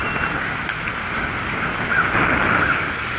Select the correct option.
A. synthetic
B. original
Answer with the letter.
B